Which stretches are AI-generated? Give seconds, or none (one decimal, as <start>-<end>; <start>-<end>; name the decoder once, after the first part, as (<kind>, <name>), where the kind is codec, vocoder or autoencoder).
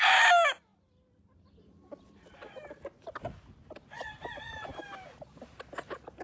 none